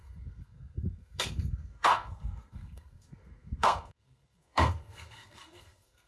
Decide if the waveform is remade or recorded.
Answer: remade